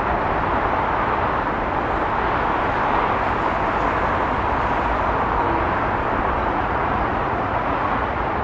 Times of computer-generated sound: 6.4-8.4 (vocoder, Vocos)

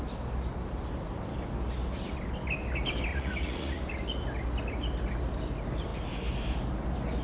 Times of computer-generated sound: 3.1-3.8 (vocoder, Vocos)

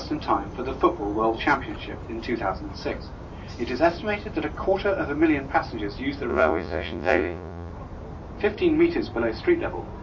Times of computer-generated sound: 6.3-7.7 (vocoder, Vocos)